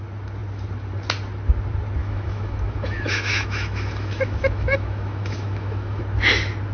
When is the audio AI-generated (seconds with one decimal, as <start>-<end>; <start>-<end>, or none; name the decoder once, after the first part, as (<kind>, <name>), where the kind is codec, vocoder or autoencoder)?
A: 2.0-6.0 (autoencoder, DAC-VAE)